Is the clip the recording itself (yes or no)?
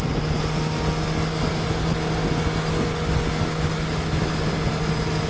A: yes